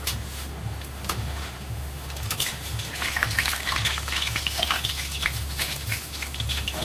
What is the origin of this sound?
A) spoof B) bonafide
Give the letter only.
A